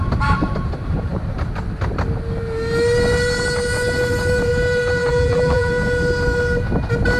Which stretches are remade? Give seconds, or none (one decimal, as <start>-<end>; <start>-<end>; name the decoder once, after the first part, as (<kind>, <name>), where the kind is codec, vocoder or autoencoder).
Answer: 5.0-5.7 (vocoder, BigVGAN v2)